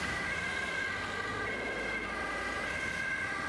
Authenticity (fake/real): real